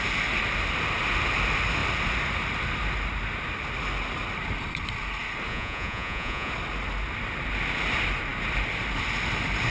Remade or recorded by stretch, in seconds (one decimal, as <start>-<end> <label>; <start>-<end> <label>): 0.0-5.5 recorded; 5.5-6.5 remade; 6.5-9.7 recorded